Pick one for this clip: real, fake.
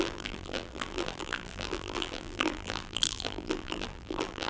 fake